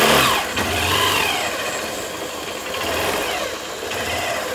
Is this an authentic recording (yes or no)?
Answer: yes